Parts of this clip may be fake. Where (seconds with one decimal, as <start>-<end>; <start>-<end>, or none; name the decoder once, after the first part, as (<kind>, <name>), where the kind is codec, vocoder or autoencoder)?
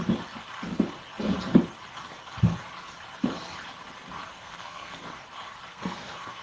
4.4-5.0 (codec, SNAC); 5.7-6.4